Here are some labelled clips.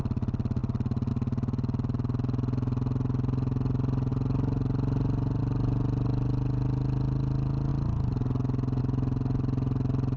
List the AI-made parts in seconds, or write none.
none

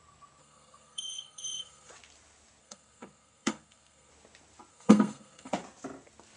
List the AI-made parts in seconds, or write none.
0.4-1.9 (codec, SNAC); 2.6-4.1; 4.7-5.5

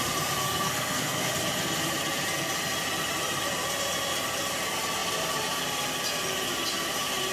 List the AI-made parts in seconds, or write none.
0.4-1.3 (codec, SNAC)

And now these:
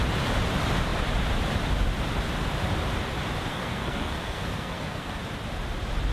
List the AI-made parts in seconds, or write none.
3.5-5.2 (codec, SNAC)

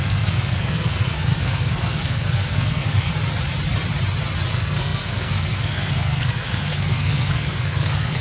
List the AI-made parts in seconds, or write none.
0.0-3.1 (codec, SNAC); 4.5-8.2